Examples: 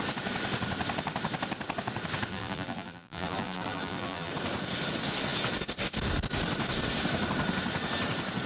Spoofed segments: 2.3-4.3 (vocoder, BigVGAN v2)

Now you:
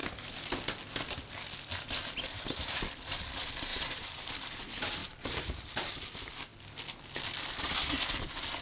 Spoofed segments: 3.7-4.3 (vocoder, BigVGAN v2); 5.0-5.9